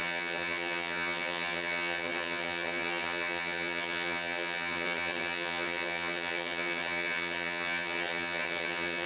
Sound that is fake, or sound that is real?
fake